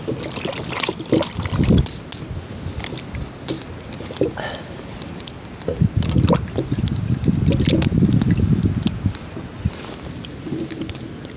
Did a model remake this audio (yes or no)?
no